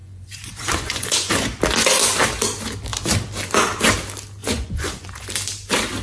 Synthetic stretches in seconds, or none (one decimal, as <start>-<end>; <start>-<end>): 0.0-1.3; 4.4-5.3